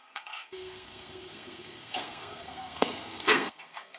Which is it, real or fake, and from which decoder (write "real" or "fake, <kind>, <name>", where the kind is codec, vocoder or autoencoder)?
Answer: fake, codec, SNAC